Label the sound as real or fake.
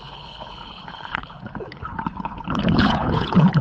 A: fake